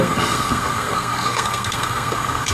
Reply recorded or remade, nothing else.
remade